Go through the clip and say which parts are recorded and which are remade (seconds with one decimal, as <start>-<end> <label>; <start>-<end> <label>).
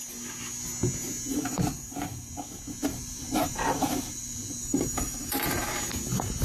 0.0-1.3 recorded; 1.3-2.3 remade; 2.3-2.9 recorded; 2.9-5.7 remade; 5.7-6.4 recorded